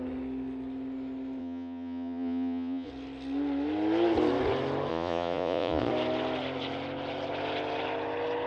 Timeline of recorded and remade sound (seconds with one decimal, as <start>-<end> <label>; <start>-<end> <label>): 0.0-1.4 recorded; 1.4-2.9 remade; 2.9-4.9 recorded; 4.9-5.9 remade; 5.9-8.5 recorded